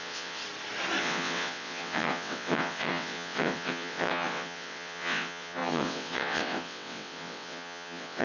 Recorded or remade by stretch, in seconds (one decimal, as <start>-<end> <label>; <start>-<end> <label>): 0.0-0.4 remade; 0.4-1.0 recorded; 1.0-8.2 remade